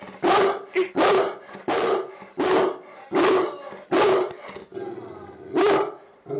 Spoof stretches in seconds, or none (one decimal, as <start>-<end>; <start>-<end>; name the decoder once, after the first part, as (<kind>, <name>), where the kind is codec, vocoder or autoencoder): 1.5-2.5 (vocoder, BigVGAN v2)